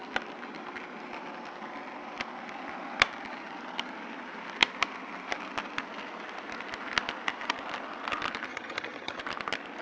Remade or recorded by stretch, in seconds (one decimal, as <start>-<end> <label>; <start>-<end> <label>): 0.0-8.5 recorded; 8.5-9.2 remade; 9.2-9.8 recorded